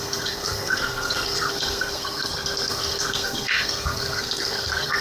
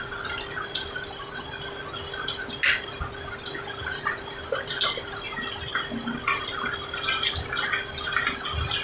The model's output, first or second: first